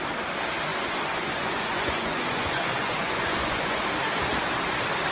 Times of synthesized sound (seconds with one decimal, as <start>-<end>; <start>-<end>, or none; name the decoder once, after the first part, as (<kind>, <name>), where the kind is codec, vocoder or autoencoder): 0.7-3.8 (vocoder, Vocos)